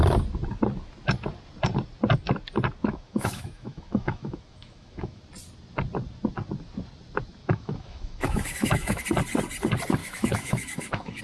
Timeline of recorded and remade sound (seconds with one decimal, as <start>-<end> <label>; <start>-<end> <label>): 0.0-2.8 recorded; 2.8-5.2 remade; 5.2-7.4 recorded; 7.4-9.0 remade; 9.0-10.0 recorded; 10.0-11.2 remade

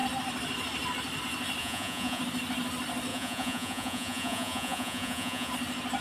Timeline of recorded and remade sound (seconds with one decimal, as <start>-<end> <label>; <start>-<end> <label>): 0.0-1.6 recorded; 1.6-2.2 remade; 2.2-3.1 recorded; 3.1-5.5 remade; 5.5-6.0 recorded

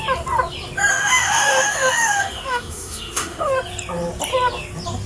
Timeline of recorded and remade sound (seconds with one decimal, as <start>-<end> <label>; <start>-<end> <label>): 0.0-0.9 recorded; 0.9-3.5 remade; 3.5-5.1 recorded